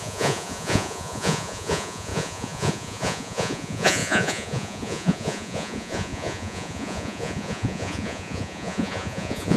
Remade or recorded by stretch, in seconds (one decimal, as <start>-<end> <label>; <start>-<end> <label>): 0.0-9.6 remade